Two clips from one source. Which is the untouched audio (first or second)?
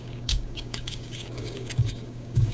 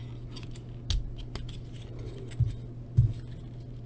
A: second